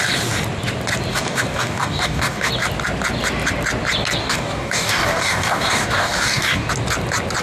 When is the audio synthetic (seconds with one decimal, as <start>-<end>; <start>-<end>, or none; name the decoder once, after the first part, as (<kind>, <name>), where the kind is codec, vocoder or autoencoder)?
1.1-2.5 (codec, DAC); 4.2-6.7